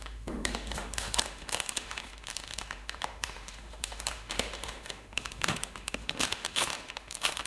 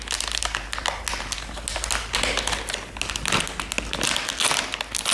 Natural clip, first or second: second